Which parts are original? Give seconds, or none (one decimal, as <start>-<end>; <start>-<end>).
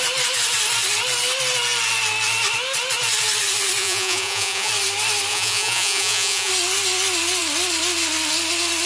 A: 0.0-3.8; 4.7-5.3; 6.5-8.9